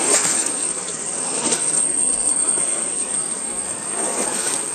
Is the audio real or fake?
fake